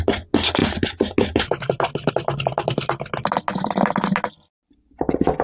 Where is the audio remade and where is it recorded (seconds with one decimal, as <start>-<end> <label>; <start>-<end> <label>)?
0.0-5.4 recorded

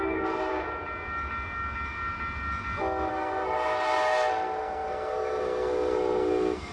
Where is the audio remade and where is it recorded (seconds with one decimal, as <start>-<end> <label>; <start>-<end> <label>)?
0.0-0.5 remade; 0.5-3.1 recorded; 3.1-6.7 remade

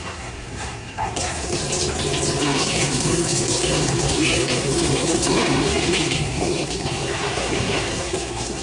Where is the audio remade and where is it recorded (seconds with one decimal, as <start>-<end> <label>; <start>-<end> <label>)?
0.0-1.6 remade; 1.6-2.4 recorded; 2.4-8.6 remade

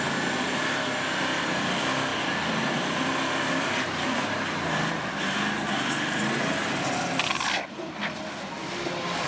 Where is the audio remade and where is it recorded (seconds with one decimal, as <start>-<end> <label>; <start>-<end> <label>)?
0.0-9.3 recorded

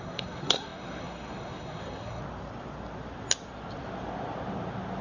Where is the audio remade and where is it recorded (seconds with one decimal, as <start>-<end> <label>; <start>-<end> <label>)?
0.0-2.2 remade; 2.2-5.0 recorded

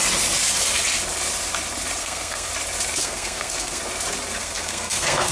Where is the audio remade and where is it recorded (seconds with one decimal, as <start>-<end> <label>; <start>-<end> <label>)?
0.0-2.0 recorded; 2.0-2.5 remade; 2.5-3.0 recorded; 3.0-3.8 remade; 3.8-4.4 recorded; 4.4-5.3 remade

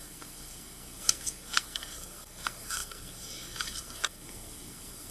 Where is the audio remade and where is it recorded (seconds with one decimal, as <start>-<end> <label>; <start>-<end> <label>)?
0.0-5.1 remade